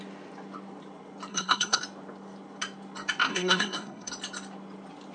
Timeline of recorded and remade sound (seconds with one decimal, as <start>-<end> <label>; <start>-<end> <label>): 0.0-1.3 recorded; 1.3-1.8 remade; 1.8-3.3 recorded; 3.3-4.1 remade; 4.1-5.1 recorded